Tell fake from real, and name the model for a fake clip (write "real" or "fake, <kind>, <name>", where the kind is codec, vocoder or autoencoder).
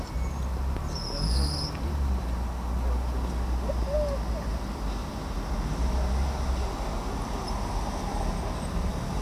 real